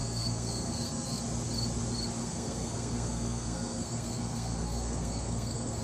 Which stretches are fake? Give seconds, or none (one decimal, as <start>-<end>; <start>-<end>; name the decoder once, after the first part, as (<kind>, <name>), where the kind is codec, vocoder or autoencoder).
0.0-1.2 (codec, SNAC); 2.2-5.8